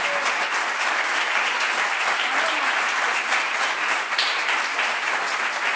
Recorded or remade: recorded